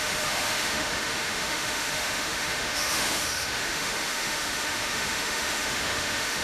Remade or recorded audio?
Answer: remade